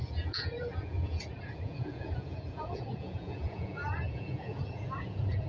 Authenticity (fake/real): fake